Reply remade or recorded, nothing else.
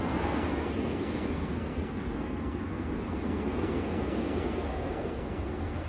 remade